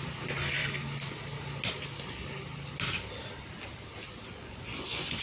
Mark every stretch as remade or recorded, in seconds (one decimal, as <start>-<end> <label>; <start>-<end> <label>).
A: 0.0-4.3 recorded; 4.3-5.2 remade